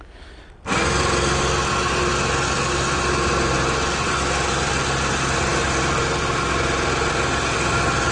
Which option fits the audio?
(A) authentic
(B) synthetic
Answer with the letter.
A